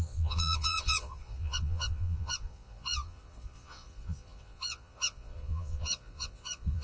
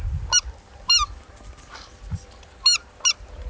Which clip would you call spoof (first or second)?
first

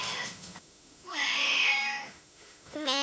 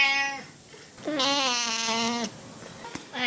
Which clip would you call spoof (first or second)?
first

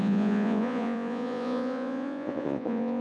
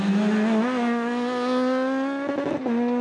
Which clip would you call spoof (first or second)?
first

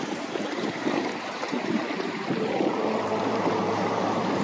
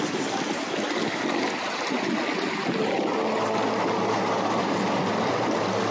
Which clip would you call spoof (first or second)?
first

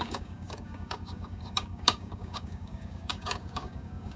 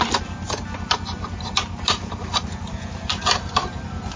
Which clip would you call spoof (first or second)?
first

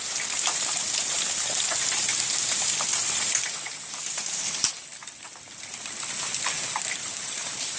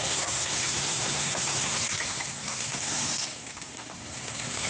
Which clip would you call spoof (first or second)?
second